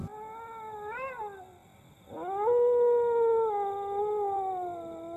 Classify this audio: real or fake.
real